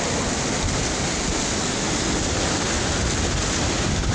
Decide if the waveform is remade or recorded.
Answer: recorded